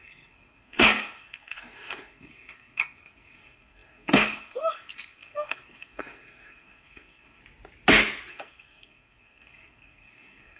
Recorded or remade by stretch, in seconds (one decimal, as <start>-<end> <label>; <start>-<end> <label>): 0.0-7.4 remade; 7.4-8.3 recorded; 8.3-10.6 remade